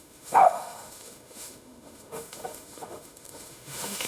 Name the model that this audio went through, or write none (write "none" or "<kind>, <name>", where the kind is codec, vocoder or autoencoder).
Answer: autoencoder, DAC-VAE